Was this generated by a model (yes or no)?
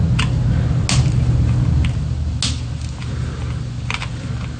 no